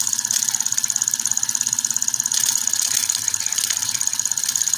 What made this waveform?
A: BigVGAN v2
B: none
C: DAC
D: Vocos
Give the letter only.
B